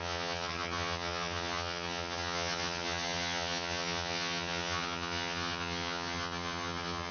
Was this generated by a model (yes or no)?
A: yes